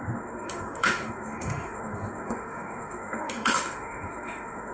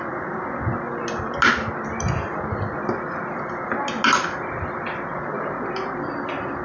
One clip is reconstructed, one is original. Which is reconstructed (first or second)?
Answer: first